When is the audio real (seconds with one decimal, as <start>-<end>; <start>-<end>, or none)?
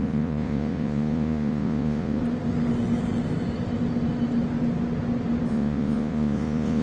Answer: 2.2-5.5